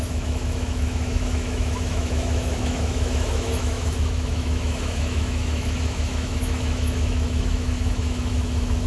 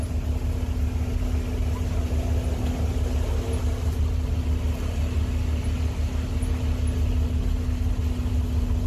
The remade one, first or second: first